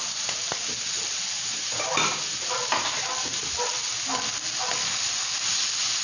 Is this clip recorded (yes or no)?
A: yes